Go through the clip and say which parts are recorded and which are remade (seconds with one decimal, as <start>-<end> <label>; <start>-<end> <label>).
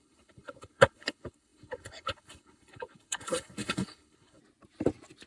0.0-4.4 remade; 4.4-5.3 recorded